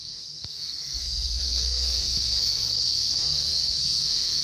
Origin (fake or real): fake